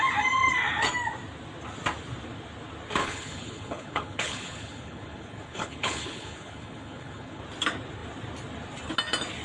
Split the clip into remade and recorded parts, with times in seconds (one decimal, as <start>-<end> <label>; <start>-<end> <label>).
0.0-3.0 recorded; 3.0-7.4 remade; 7.4-9.4 recorded